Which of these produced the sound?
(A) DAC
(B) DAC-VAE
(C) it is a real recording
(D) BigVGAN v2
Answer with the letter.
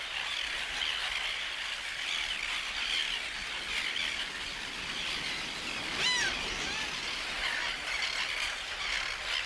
C